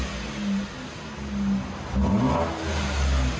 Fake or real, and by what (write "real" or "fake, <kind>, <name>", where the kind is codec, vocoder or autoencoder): real